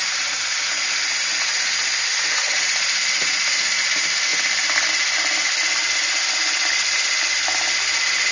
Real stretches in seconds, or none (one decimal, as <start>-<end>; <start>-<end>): 0.0-8.3